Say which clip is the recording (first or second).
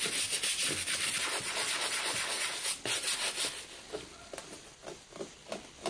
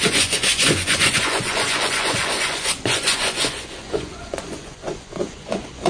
first